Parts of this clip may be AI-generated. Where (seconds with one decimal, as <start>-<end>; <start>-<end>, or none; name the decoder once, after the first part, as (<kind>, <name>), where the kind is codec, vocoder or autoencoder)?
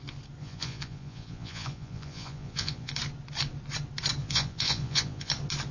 0.4-2.9 (vocoder, Vocos); 4.2-5.3